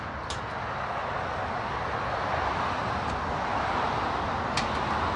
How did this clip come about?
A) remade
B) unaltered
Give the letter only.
B